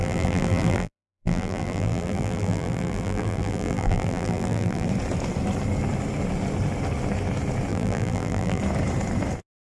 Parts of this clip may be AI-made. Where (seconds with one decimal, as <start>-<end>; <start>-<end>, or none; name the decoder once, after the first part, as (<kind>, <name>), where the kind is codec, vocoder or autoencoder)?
0.0-4.9 (vocoder, BigVGAN v2); 7.7-8.6